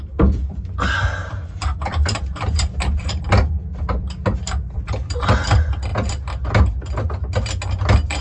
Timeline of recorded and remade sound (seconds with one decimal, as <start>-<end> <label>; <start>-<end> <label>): 0.0-1.2 recorded; 1.2-3.2 remade; 3.2-8.2 recorded